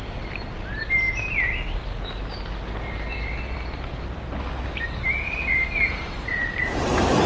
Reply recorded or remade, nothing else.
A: recorded